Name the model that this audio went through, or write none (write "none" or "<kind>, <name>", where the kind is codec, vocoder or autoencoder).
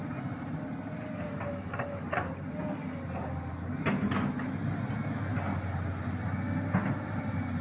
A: none